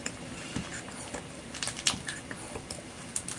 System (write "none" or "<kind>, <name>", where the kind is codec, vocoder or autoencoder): none